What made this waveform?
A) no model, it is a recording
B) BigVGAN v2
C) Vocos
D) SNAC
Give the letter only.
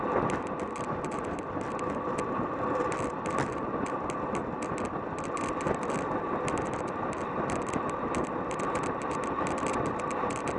A